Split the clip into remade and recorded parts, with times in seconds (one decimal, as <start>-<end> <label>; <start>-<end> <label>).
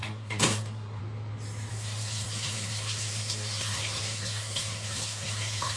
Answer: 0.0-1.0 remade; 1.0-1.7 recorded; 1.7-5.8 remade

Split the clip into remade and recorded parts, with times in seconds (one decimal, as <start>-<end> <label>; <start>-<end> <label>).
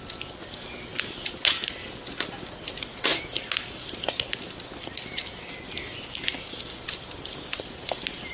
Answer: 0.0-8.3 recorded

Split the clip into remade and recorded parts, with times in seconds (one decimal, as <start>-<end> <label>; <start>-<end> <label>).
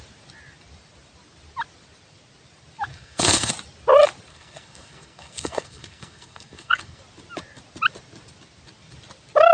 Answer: 0.0-2.9 recorded; 2.9-3.5 remade; 3.5-4.3 recorded; 4.3-7.0 remade; 7.0-9.5 recorded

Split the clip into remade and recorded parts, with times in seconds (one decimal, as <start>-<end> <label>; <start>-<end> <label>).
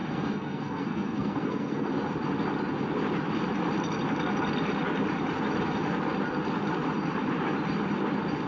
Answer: 0.0-1.9 remade; 1.9-8.5 recorded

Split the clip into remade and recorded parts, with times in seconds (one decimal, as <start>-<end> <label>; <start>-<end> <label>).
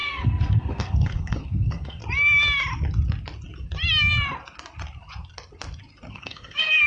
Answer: 0.0-2.0 remade; 2.0-6.1 recorded; 6.1-6.9 remade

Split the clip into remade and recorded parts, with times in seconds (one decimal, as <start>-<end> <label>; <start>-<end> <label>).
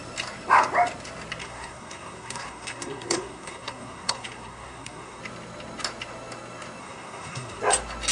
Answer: 0.0-1.4 recorded; 1.4-5.2 remade; 5.2-6.8 recorded; 6.8-7.6 remade; 7.6-8.1 recorded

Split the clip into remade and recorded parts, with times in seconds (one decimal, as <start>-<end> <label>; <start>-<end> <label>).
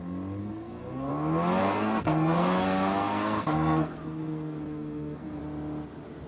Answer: 0.0-0.4 recorded; 0.4-1.1 remade; 1.1-1.6 recorded; 1.6-5.4 remade; 5.4-6.3 recorded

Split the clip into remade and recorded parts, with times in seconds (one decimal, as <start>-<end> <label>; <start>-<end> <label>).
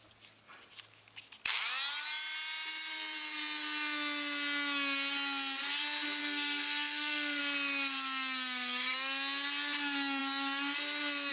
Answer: 0.0-6.2 recorded; 6.2-7.4 remade; 7.4-11.3 recorded